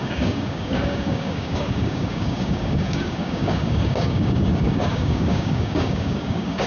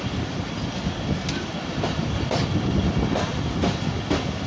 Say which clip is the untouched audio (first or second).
second